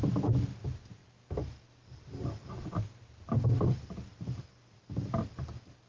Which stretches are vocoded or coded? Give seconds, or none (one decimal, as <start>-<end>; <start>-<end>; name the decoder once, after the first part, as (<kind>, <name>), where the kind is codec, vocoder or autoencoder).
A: none